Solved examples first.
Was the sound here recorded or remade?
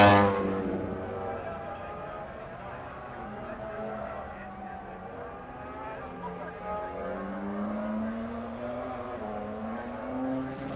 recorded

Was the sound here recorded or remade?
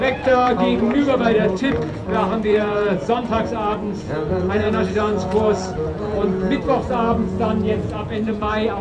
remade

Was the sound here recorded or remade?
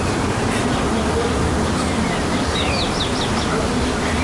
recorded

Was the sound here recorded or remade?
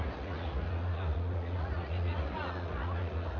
remade